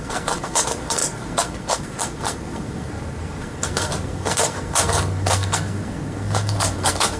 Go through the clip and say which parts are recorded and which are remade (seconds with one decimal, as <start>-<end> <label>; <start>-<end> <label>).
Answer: 0.0-7.2 remade

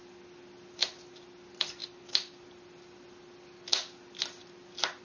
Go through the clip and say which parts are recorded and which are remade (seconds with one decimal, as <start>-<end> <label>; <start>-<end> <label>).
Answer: 0.0-5.0 recorded

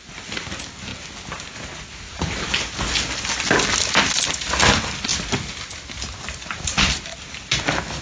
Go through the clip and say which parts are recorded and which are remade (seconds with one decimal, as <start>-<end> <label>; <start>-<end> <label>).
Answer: 0.0-8.0 recorded

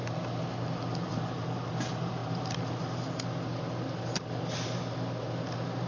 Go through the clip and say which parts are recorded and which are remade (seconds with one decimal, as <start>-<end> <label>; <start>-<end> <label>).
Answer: 0.0-5.9 recorded

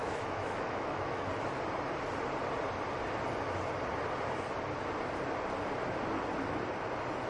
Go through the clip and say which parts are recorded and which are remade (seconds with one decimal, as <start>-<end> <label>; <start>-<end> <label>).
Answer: 0.0-1.3 remade; 1.3-7.3 recorded

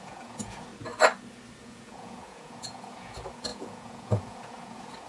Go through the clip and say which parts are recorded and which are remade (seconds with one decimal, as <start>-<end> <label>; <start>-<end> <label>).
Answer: 0.0-0.7 remade; 0.7-1.6 recorded; 1.6-5.1 remade

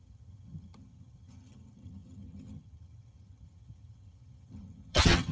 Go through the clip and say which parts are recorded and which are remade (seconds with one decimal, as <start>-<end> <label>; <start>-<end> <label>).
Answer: 0.0-5.3 remade